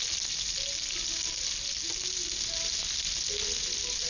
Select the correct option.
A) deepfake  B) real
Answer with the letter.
B